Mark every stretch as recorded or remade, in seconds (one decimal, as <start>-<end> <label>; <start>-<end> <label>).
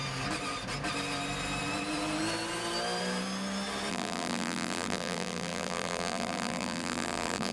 0.0-3.9 recorded; 3.9-7.5 remade